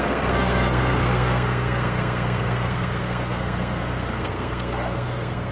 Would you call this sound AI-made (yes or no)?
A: yes